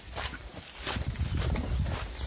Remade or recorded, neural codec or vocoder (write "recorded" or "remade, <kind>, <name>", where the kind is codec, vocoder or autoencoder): recorded